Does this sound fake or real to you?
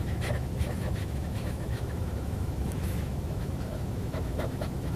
fake